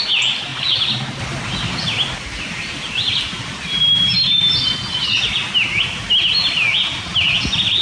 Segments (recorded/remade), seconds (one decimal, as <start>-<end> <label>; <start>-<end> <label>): 0.0-7.8 recorded